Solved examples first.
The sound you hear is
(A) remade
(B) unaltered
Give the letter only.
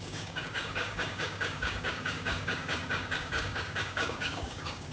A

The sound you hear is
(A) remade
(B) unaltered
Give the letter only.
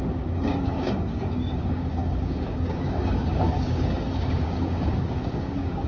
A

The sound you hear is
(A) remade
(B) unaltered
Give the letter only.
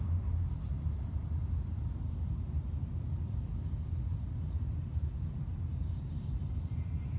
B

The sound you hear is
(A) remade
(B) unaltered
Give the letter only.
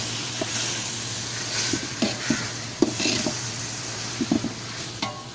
B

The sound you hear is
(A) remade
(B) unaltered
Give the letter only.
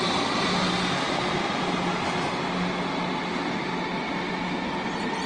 B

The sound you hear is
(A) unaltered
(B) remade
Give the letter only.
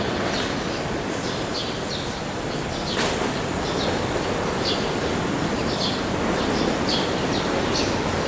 A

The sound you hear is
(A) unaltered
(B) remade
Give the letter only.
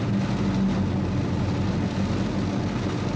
A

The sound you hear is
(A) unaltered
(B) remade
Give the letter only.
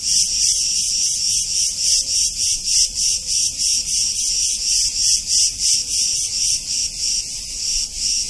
A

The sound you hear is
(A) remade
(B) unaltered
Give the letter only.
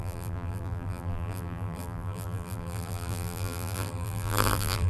A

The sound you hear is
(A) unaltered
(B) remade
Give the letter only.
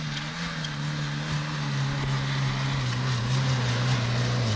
A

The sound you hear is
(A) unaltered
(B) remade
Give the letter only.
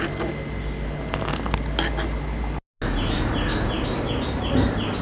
A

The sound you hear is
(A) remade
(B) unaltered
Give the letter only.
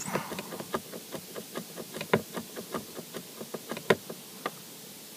B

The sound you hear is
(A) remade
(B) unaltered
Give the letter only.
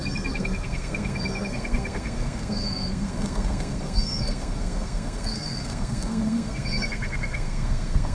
A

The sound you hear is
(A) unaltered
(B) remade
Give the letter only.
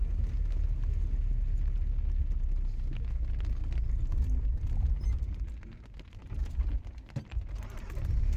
A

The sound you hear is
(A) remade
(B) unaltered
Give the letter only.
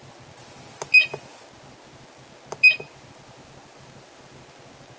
B